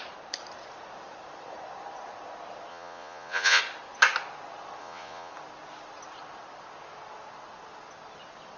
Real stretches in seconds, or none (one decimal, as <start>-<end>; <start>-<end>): 0.0-2.7; 3.6-4.8; 5.3-8.6